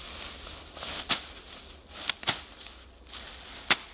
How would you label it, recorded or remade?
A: recorded